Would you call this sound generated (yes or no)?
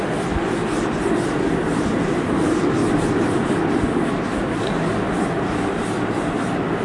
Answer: no